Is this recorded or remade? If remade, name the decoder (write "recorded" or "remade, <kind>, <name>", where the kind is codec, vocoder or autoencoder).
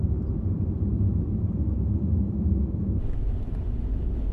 recorded